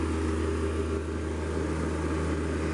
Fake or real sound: real